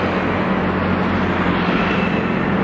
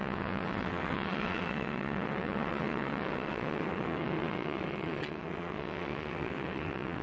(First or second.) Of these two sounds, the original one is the first